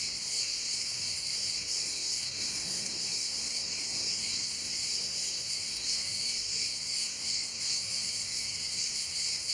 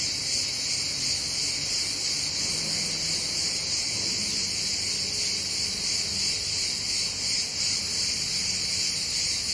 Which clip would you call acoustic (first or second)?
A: second